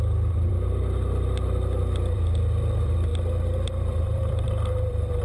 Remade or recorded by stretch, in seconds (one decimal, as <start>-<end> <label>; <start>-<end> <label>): 0.0-3.1 remade; 3.1-3.8 recorded; 3.8-5.2 remade